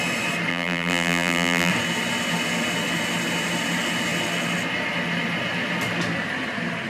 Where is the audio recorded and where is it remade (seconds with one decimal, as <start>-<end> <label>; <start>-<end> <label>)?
0.0-0.5 recorded; 0.5-1.7 remade; 1.7-6.9 recorded